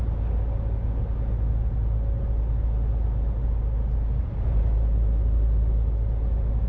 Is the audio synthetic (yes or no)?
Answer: no